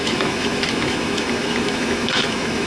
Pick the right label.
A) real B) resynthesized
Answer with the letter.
B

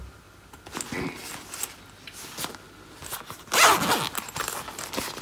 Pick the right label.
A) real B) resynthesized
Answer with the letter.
A